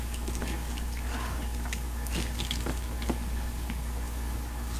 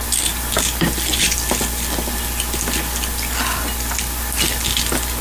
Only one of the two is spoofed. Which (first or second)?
first